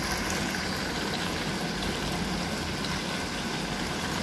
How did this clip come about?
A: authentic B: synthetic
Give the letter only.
A